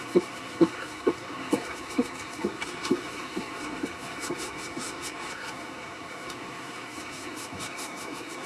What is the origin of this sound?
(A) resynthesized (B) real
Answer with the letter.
A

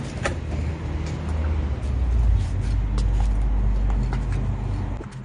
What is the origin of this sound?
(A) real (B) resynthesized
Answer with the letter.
A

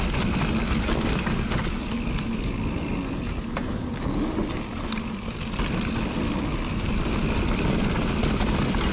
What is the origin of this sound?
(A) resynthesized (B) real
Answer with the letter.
B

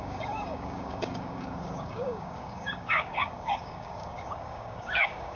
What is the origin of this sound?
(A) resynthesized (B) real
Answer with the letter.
A